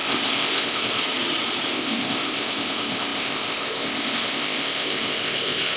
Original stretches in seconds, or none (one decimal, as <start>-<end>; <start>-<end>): 1.0-1.7